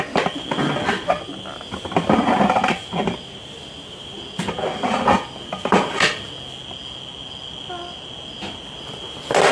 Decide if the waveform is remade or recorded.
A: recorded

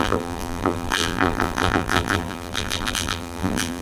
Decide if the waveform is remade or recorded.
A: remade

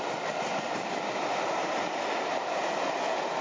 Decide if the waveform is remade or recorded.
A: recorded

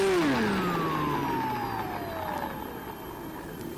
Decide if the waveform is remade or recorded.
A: recorded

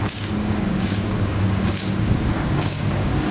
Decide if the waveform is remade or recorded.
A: remade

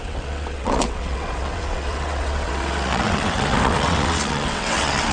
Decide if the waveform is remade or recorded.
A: remade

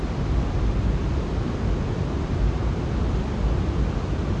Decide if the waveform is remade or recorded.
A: recorded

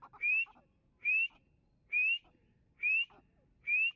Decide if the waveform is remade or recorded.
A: recorded